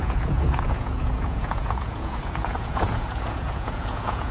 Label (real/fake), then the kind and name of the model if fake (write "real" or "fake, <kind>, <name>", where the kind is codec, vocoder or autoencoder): fake, vocoder, Vocos